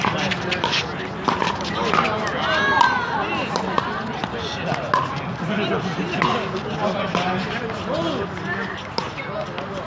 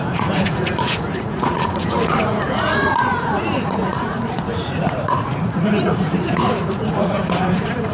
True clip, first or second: first